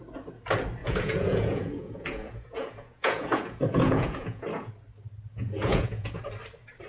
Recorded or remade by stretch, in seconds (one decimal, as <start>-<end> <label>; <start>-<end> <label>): 0.0-0.8 recorded; 0.8-4.7 remade; 4.7-5.3 recorded; 5.3-6.2 remade; 6.2-6.9 recorded